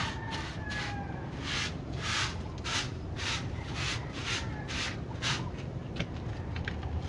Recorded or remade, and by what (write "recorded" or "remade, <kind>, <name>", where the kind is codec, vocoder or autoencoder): recorded